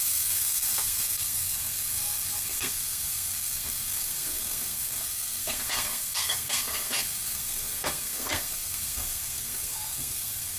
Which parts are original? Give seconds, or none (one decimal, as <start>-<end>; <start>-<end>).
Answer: none